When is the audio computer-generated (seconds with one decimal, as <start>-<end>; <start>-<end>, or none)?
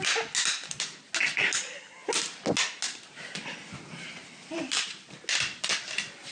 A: none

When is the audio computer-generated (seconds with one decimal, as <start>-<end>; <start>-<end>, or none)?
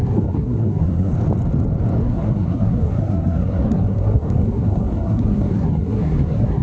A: 0.0-1.1; 2.0-6.6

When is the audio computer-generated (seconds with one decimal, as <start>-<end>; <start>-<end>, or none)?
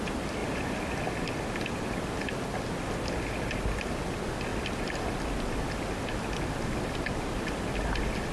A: none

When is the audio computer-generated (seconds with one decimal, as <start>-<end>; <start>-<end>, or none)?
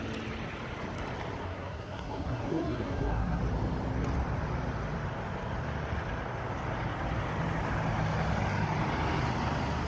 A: 1.4-3.4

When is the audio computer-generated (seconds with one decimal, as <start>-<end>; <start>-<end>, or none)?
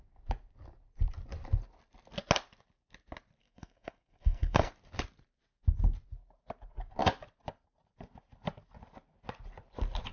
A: 3.4-4.7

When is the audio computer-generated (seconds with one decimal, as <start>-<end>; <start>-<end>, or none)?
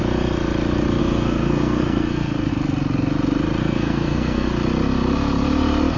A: 1.0-2.5; 3.6-4.5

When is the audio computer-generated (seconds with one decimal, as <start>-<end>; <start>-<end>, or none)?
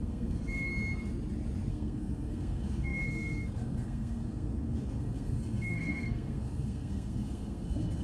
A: 0.0-0.7; 1.7-8.0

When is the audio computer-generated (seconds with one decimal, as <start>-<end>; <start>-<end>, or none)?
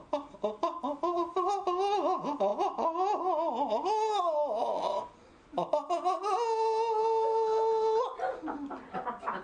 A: none